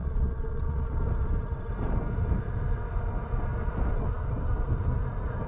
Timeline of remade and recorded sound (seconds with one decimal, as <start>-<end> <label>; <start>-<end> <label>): 0.0-1.0 remade; 1.0-5.5 recorded

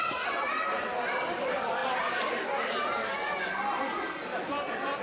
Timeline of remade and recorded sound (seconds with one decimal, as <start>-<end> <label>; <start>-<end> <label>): 0.0-5.0 recorded

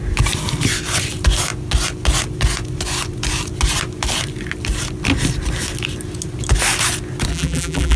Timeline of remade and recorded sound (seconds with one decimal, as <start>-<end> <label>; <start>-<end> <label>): 0.0-7.3 recorded; 7.3-8.0 remade

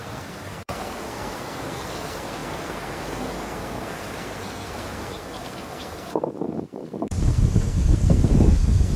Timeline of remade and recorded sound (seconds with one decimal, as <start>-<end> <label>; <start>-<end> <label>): 0.0-9.0 remade

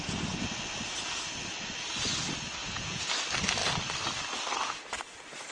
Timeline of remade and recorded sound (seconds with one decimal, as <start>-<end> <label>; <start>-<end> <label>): 0.0-2.6 recorded; 2.6-3.1 remade; 3.1-5.5 recorded

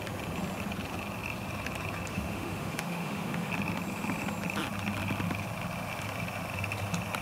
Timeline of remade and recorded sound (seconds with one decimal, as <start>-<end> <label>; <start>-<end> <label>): 0.0-2.1 recorded; 2.1-3.5 remade; 3.5-7.2 recorded